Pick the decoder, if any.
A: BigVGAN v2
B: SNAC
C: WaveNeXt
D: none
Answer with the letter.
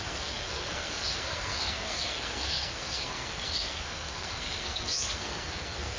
B